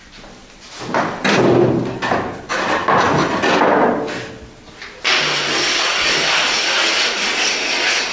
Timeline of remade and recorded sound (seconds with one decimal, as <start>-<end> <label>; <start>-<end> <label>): 0.0-8.1 recorded